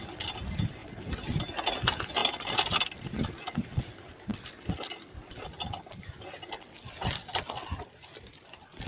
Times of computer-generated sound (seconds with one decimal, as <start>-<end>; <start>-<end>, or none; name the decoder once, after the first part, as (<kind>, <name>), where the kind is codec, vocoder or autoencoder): 0.8-1.7 (vocoder, BigVGAN v2); 4.3-5.4